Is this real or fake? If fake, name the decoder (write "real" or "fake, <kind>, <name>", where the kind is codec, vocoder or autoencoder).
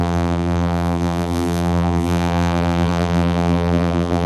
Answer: fake, vocoder, BigVGAN v2